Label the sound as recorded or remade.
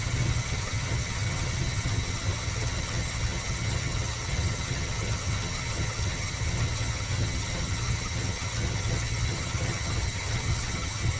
remade